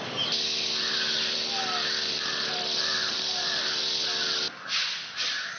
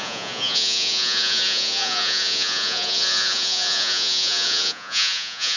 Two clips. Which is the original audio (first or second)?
first